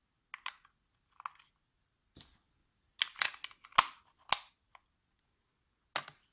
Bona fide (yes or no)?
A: yes